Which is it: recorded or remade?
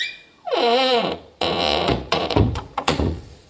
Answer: remade